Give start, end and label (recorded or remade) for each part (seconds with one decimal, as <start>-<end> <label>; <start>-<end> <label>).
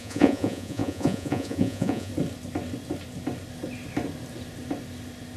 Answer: 0.0-2.1 remade; 2.1-5.4 recorded